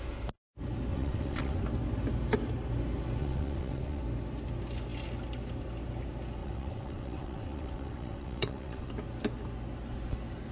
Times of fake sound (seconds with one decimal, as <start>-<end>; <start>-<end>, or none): 0.9-1.6; 3.2-4.0; 6.4-8.9